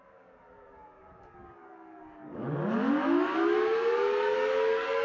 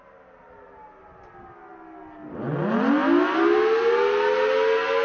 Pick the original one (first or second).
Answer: second